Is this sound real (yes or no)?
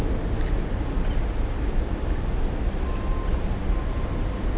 yes